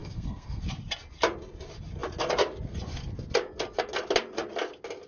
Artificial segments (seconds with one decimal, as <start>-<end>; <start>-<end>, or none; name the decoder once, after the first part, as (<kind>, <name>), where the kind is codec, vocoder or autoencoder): 0.0-0.6 (codec, SNAC)